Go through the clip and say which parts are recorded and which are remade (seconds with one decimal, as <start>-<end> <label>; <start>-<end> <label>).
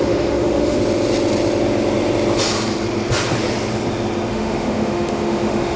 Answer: 0.0-0.8 remade; 0.8-4.3 recorded; 4.3-5.8 remade